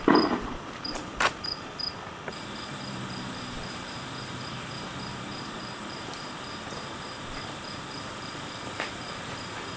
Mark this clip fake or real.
fake